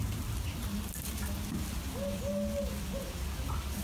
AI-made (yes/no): no